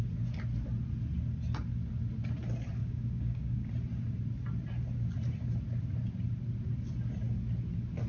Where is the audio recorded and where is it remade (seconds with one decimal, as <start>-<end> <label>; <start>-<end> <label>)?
0.0-2.8 recorded; 2.8-3.7 remade; 3.7-8.1 recorded